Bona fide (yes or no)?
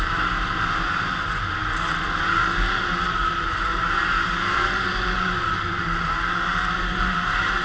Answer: no